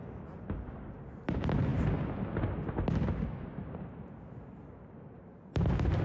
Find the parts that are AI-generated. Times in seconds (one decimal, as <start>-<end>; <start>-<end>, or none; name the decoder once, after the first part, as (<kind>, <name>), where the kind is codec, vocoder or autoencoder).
none